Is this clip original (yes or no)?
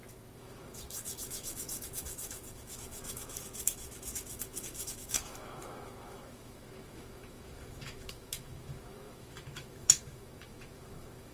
no